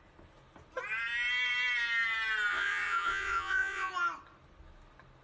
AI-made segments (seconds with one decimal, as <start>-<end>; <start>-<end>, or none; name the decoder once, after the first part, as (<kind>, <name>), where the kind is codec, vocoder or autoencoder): 2.5-3.9 (vocoder, Vocos)